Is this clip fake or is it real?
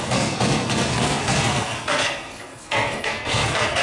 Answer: fake